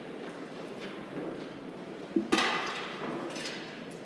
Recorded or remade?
remade